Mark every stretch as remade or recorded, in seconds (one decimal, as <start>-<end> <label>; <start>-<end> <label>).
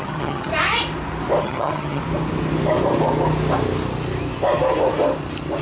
0.0-0.5 remade; 0.5-1.4 recorded; 1.4-2.0 remade; 2.0-5.6 recorded